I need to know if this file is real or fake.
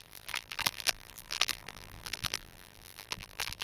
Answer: fake